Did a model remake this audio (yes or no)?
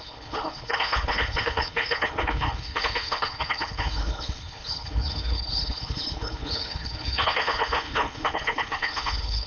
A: yes